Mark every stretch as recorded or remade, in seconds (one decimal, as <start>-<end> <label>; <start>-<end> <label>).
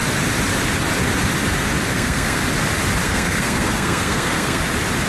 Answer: 0.0-1.9 recorded; 1.9-2.4 remade; 2.4-3.0 recorded; 3.0-4.6 remade; 4.6-5.1 recorded